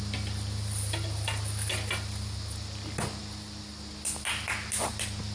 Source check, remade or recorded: recorded